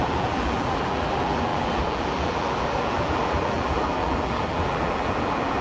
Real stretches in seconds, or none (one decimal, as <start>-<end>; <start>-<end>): none